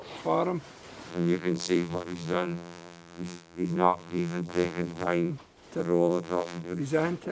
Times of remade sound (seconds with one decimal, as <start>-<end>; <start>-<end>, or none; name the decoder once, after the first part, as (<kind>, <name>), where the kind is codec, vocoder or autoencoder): 1.1-5.3 (vocoder, BigVGAN v2); 5.8-6.8